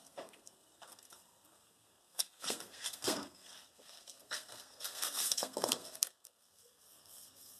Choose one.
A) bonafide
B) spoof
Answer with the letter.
B